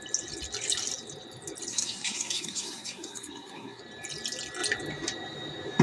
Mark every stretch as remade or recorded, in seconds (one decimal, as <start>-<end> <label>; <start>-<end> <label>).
0.0-1.7 recorded; 1.7-3.8 remade; 3.8-5.8 recorded